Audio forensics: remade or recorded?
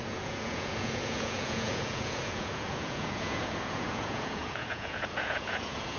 remade